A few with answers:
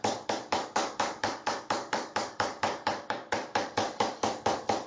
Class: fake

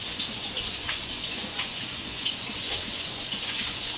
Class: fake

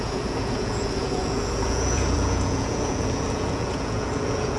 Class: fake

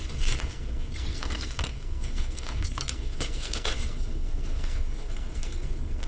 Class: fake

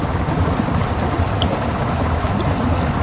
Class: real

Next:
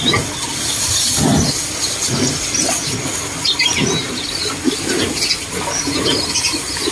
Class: real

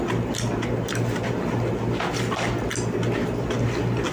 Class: real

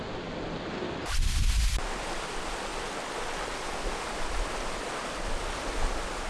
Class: real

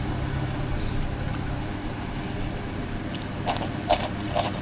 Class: fake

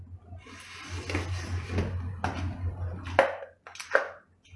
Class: real